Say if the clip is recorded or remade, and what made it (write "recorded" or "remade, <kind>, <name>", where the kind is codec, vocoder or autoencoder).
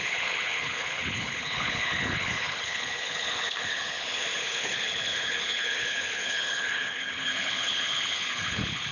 remade, codec, HILCodec